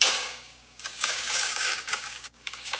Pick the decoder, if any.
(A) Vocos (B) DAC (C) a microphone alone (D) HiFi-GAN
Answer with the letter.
B